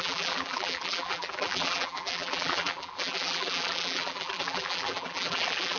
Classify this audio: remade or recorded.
remade